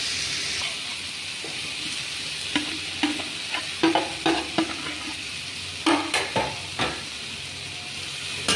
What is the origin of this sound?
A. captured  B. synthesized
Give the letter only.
A